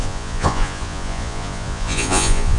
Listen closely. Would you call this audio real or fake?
fake